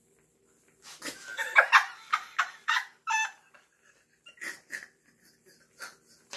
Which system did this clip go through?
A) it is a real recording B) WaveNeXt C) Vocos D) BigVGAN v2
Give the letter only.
A